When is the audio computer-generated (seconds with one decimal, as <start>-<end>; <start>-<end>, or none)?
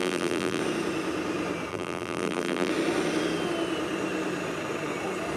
0.0-0.6; 1.7-2.7